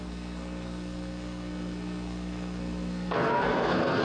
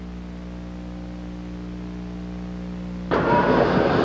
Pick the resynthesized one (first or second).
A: first